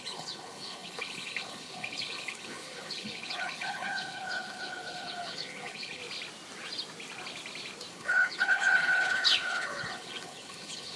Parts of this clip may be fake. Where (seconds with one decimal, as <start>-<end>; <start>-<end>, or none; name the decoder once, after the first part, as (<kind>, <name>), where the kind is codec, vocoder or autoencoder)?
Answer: 0.0-6.0 (codec, HILCodec); 7.9-11.0